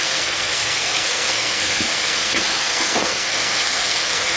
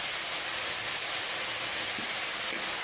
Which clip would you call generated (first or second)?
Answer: first